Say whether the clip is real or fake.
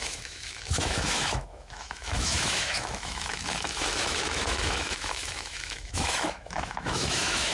fake